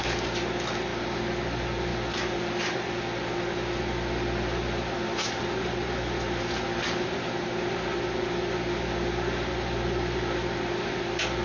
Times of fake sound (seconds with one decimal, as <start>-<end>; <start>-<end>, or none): none